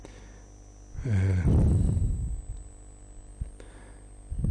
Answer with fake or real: real